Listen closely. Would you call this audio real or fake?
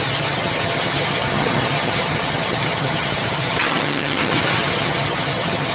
fake